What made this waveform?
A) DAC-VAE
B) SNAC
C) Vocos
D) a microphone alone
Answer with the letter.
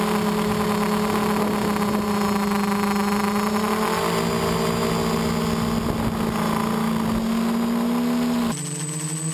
D